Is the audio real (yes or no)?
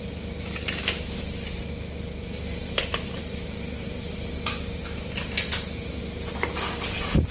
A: yes